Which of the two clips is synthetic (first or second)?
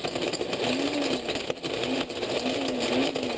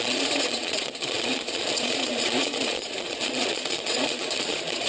second